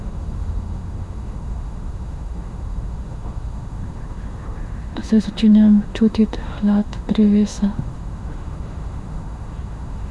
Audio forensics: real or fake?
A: fake